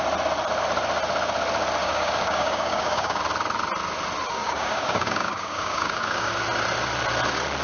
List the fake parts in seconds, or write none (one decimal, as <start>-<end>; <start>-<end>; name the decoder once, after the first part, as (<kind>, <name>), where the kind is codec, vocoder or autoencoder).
1.8-3.2 (codec, DAC); 4.3-6.3